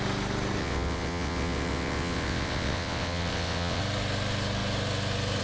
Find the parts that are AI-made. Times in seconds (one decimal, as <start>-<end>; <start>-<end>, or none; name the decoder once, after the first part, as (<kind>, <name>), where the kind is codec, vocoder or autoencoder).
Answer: 0.6-3.8 (vocoder, WaveNeXt)